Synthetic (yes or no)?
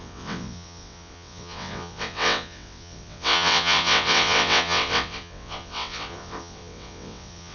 yes